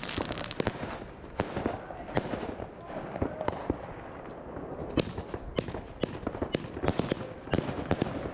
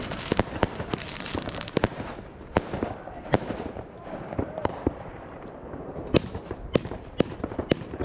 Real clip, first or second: first